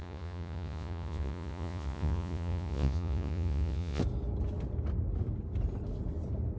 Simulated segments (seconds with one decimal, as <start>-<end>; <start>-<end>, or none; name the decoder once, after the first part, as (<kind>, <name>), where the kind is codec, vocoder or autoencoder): 0.0-4.0 (vocoder, Vocos)